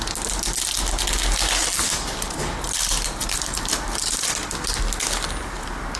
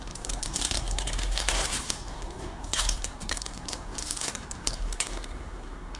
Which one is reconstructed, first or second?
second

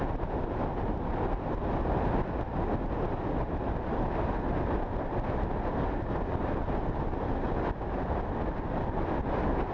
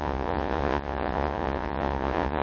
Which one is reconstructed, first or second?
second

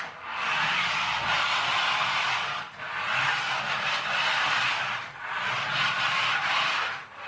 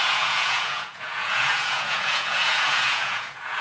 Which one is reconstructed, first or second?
second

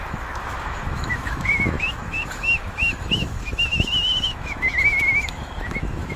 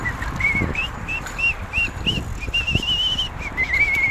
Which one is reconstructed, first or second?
first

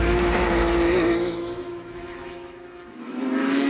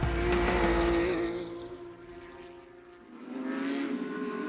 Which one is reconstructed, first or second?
first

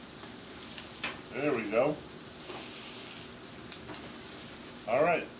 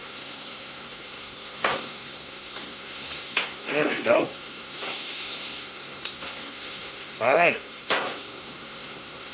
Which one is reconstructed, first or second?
second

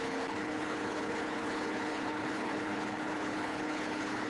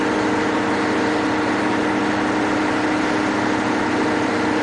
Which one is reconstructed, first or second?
first